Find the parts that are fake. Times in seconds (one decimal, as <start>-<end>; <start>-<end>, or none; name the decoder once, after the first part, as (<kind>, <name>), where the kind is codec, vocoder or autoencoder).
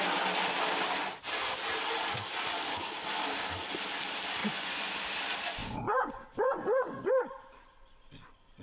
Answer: 4.4-4.9 (vocoder, Vocos); 5.6-7.1